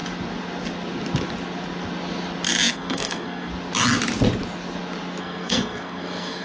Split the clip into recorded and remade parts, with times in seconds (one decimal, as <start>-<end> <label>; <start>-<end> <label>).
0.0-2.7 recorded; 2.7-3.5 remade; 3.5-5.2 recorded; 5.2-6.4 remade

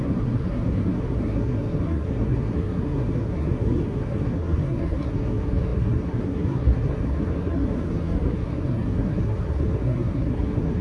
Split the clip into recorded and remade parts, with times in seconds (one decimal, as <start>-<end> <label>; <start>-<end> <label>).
0.0-10.8 remade

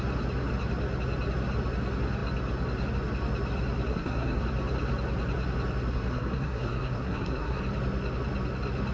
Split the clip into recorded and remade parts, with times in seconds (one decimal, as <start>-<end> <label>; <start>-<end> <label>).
0.0-3.9 recorded; 3.9-4.4 remade; 4.4-5.9 recorded; 5.9-7.6 remade; 7.6-8.9 recorded

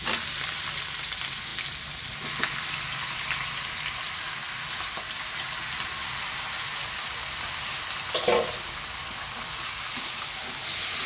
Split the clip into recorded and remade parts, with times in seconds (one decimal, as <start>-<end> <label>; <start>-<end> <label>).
0.0-11.1 recorded